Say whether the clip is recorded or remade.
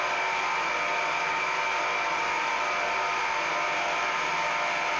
recorded